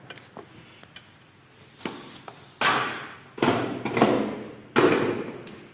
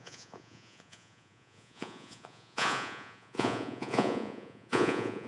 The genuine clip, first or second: first